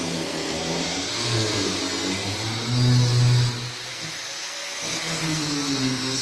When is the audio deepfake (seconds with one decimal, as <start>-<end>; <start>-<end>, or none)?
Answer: 0.0-1.8; 3.9-6.2